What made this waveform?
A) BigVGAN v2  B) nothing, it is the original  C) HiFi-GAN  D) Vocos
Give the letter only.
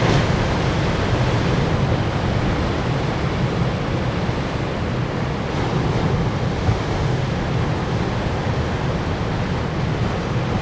B